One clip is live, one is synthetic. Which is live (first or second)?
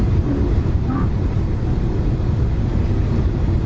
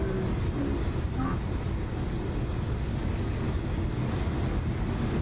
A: second